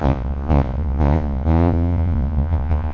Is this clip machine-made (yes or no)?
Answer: yes